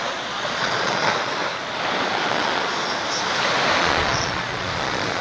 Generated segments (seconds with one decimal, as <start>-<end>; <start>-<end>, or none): 0.0-1.4; 2.1-2.7; 3.8-5.2